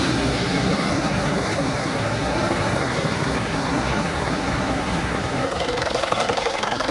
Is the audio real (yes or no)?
no